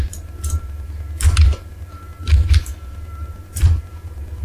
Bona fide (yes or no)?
no